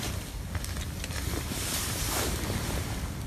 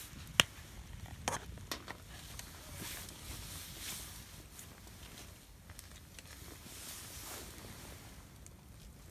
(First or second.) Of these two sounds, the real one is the second